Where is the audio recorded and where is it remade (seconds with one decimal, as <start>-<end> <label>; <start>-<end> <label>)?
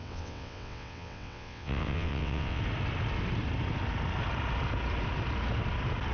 0.0-2.6 remade; 2.6-6.1 recorded